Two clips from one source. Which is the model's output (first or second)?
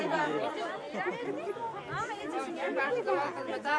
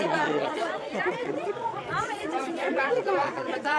second